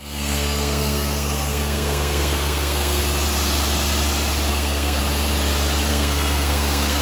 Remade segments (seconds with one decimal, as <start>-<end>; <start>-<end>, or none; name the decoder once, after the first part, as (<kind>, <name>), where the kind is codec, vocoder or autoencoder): 0.0-3.0 (codec, SNAC); 4.5-5.0; 5.9-7.0